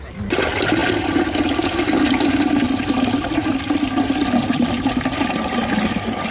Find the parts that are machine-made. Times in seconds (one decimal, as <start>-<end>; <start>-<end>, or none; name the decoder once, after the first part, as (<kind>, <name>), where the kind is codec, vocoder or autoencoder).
none